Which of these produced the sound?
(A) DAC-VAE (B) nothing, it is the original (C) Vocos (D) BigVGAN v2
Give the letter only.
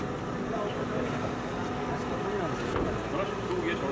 B